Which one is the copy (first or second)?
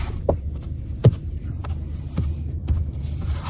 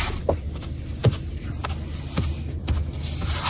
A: first